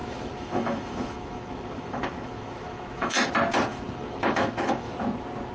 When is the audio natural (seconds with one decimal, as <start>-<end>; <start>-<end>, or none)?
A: 3.3-3.7; 4.9-5.5